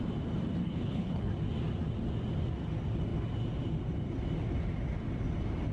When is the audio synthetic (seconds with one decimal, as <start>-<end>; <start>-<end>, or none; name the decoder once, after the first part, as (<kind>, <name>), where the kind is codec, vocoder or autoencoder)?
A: 0.6-1.3 (codec, HILCodec)